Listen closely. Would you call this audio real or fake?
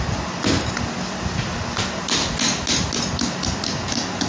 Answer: real